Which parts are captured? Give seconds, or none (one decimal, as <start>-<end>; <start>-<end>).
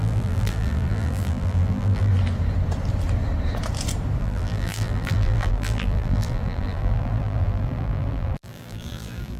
2.1-4.2